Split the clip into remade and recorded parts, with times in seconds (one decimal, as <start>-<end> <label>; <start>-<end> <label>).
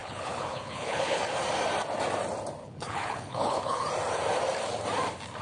0.0-1.2 remade; 1.2-2.6 recorded; 2.6-3.8 remade; 3.8-5.4 recorded